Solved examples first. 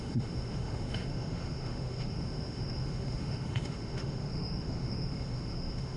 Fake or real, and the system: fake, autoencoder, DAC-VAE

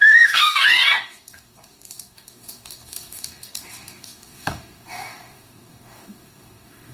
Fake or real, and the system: fake, codec, DAC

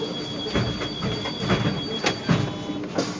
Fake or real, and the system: real